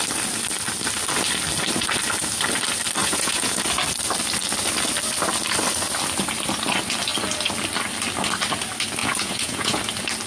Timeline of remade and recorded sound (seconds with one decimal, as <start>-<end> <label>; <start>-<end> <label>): 0.0-3.0 recorded; 3.0-3.6 remade; 3.6-9.0 recorded; 9.0-9.8 remade; 9.8-10.3 recorded